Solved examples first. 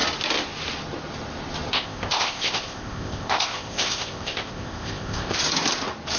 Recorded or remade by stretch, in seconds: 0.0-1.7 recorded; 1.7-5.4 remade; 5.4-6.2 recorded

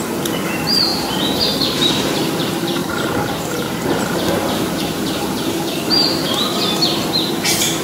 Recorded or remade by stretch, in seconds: 0.0-0.9 recorded; 0.9-2.3 remade; 2.3-2.8 recorded; 2.8-7.3 remade; 7.3-7.8 recorded

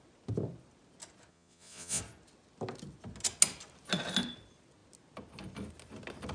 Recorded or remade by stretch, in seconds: 0.0-1.3 recorded; 1.3-2.0 remade; 2.0-6.3 recorded

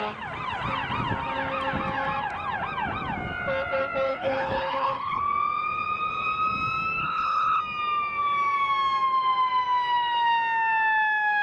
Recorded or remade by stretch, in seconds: 0.0-4.1 recorded; 4.1-5.2 remade; 5.2-7.0 recorded; 7.0-7.6 remade; 7.6-11.4 recorded

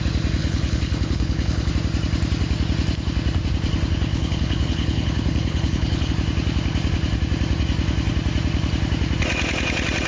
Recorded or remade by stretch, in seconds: 0.0-0.4 recorded; 0.4-1.7 remade; 1.7-4.1 recorded; 4.1-6.1 remade; 6.1-10.1 recorded